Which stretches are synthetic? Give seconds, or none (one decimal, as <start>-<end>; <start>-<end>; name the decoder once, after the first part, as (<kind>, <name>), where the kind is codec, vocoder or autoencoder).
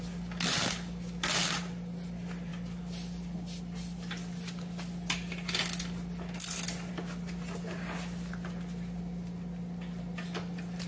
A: none